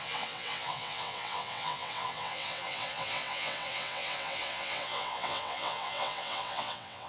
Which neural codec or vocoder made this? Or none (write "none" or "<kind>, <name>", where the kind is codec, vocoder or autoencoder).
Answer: vocoder, WaveNeXt